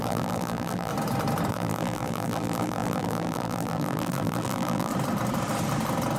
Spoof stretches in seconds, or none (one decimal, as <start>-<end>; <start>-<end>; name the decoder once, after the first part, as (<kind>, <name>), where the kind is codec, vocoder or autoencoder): 0.0-0.9 (vocoder, BigVGAN v2); 1.5-4.9